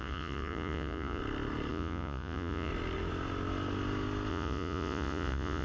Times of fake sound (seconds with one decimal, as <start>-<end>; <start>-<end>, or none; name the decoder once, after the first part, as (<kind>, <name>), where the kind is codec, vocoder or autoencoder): 0.0-1.2 (vocoder, Vocos); 1.7-2.7; 4.3-5.6